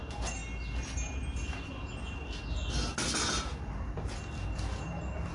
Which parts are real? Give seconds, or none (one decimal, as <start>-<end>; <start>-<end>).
0.0-5.3